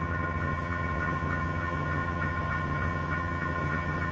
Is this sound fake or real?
fake